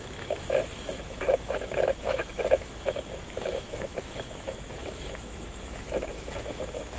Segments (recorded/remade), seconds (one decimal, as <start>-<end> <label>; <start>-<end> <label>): 0.0-7.0 remade